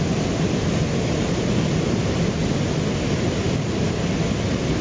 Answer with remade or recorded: recorded